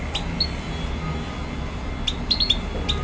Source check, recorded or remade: recorded